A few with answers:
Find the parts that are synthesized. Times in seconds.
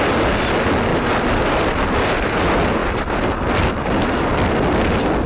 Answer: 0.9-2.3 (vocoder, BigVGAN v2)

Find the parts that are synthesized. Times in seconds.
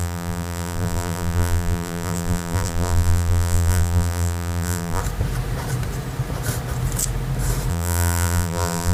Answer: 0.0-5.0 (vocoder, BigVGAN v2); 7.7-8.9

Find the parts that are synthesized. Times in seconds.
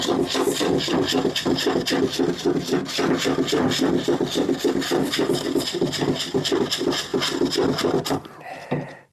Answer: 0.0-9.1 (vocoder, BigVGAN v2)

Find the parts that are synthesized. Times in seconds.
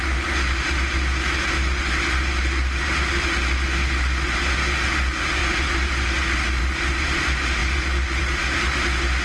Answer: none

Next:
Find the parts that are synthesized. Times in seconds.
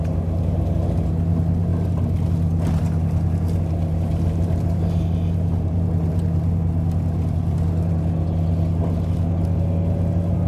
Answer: none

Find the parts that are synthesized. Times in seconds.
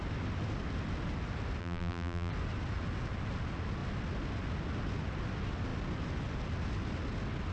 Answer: 1.6-2.3 (vocoder, BigVGAN v2)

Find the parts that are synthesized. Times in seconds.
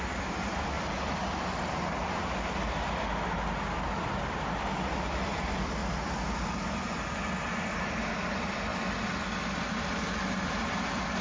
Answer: 0.0-5.8 (vocoder, BigVGAN v2); 6.5-8.7; 10.5-11.2